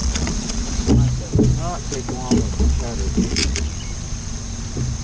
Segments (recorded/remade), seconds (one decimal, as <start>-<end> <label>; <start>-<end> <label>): 0.0-0.9 remade; 0.9-3.3 recorded; 3.3-3.8 remade; 3.8-5.0 recorded